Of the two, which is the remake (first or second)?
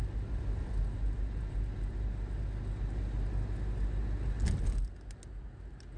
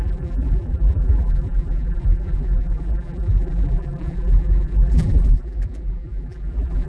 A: second